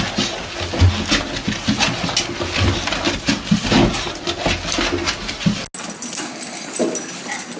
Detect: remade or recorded recorded